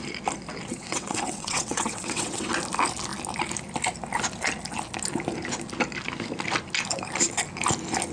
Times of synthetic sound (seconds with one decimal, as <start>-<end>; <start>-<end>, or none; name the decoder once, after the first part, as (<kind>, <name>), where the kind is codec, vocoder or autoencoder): 0.7-2.5 (vocoder, WaveNeXt)

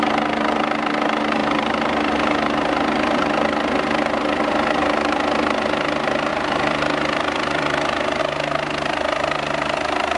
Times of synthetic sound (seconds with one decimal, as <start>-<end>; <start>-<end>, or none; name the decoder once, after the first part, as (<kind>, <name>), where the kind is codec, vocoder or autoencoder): 1.4-3.2 (vocoder, BigVGAN v2); 6.3-8.2

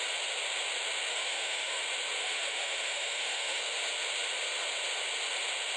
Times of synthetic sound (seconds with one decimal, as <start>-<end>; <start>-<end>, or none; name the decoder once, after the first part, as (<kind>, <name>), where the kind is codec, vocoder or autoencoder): 1.1-1.8 (autoencoder, DAC-VAE); 2.2-3.6

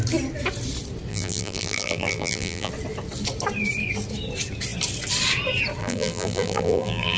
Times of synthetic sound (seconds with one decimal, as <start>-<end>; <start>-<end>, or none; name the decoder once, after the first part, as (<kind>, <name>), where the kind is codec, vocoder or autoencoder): 1.1-2.7 (vocoder, BigVGAN v2); 5.8-7.2

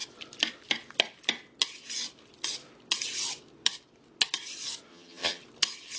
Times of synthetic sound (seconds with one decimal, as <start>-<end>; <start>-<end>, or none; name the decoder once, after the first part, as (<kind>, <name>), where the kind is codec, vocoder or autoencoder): 4.9-5.4 (vocoder, HiFi-GAN)

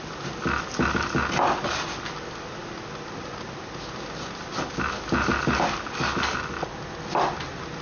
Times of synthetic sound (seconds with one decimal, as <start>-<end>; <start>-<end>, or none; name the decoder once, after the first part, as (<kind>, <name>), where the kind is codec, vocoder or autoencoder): none